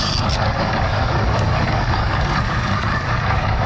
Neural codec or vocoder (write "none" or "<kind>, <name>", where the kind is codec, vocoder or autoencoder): codec, DAC